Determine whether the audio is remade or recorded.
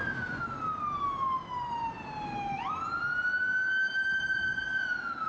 recorded